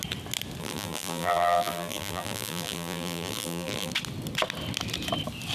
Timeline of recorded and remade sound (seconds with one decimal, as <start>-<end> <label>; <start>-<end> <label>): 0.0-0.6 recorded; 0.6-3.9 remade; 3.9-5.5 recorded